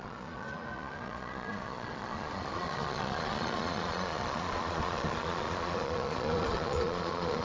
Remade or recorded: remade